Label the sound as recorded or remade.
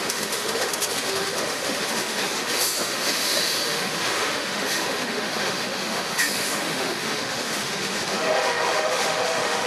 remade